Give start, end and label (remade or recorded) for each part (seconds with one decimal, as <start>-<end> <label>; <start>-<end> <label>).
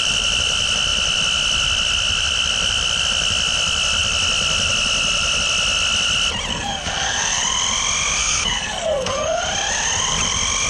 0.0-6.5 recorded; 6.5-7.4 remade; 7.4-8.2 recorded; 8.2-9.4 remade; 9.4-10.7 recorded